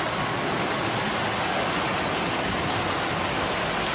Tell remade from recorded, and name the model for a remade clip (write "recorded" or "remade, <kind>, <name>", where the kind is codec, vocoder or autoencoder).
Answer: recorded